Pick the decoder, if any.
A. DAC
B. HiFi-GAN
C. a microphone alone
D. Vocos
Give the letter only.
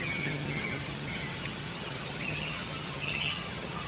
B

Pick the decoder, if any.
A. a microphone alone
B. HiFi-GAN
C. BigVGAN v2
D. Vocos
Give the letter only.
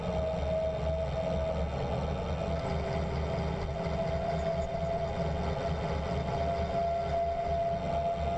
A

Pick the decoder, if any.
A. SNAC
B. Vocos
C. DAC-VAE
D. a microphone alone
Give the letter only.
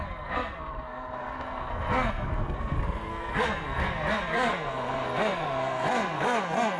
A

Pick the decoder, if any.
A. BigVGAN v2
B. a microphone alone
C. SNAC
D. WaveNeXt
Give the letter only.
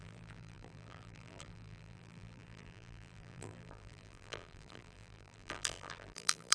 A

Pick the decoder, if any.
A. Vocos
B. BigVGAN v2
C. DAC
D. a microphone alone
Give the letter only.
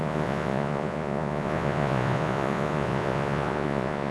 A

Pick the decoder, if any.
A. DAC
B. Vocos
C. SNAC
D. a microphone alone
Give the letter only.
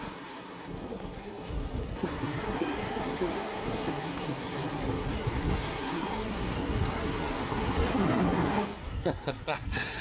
C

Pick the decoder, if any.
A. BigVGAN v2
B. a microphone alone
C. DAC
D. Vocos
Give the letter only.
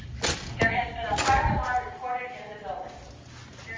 B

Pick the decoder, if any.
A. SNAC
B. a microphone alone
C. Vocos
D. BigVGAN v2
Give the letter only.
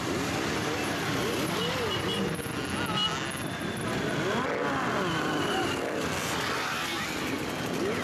B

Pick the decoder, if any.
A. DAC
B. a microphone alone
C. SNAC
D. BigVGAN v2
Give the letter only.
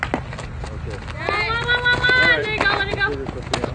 B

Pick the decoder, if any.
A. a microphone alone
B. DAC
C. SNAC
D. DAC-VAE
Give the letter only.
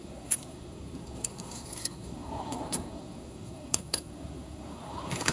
C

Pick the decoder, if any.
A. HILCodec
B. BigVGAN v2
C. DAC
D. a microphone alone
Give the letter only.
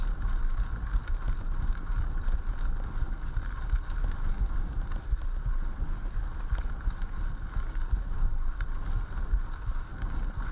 D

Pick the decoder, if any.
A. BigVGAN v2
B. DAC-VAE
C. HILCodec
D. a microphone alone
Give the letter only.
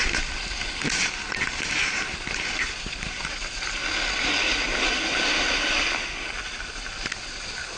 D